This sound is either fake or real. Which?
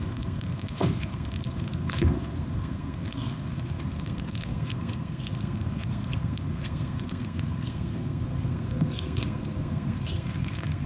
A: fake